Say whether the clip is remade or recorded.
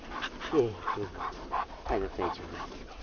remade